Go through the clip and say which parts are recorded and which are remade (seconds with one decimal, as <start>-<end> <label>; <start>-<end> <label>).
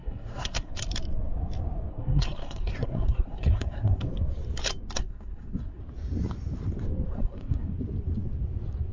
0.0-0.7 remade; 0.7-1.9 recorded; 1.9-4.0 remade; 4.0-5.0 recorded; 5.0-5.8 remade; 5.8-7.1 recorded; 7.1-7.7 remade; 7.7-8.9 recorded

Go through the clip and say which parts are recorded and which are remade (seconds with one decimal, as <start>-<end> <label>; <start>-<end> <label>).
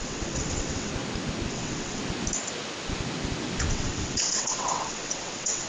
0.0-0.9 remade; 0.9-1.5 recorded; 1.5-2.0 remade; 2.0-3.7 recorded; 3.7-5.7 remade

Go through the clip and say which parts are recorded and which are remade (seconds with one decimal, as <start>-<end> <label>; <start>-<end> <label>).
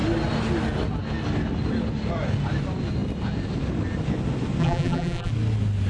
0.0-4.6 recorded; 4.6-5.3 remade; 5.3-5.9 recorded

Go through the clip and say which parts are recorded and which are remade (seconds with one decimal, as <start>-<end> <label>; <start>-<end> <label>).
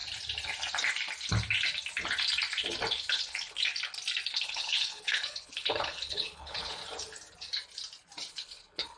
0.0-2.9 recorded; 2.9-3.7 remade; 3.7-4.3 recorded; 4.3-6.8 remade; 6.8-8.3 recorded; 8.3-9.0 remade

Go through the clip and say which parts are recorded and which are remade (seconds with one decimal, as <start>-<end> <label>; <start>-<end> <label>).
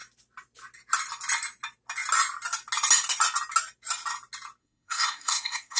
0.0-4.6 recorded; 4.6-5.8 remade